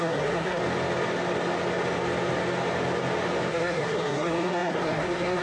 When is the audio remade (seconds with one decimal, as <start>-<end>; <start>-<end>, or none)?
0.0-0.6; 3.5-5.4